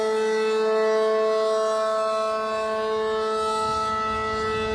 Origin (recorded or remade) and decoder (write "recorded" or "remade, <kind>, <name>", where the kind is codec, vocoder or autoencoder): recorded